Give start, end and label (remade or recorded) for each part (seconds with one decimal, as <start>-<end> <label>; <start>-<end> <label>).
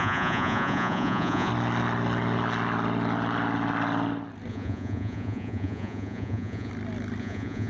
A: 0.0-1.5 remade; 1.5-4.5 recorded; 4.5-6.7 remade; 6.7-7.2 recorded; 7.2-7.7 remade